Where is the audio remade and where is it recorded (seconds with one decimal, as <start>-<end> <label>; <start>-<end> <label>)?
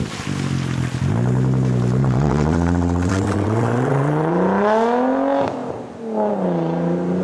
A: 0.0-2.0 recorded; 2.0-4.3 remade; 4.3-7.2 recorded